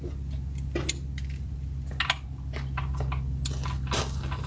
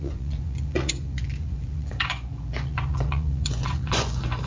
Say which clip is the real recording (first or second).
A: first